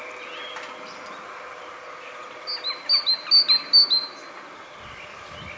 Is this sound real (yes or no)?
yes